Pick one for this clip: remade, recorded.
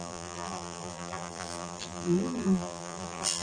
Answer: remade